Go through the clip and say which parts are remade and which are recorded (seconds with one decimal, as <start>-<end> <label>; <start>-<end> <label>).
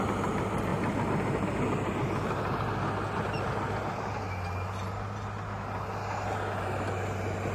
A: 0.0-7.5 recorded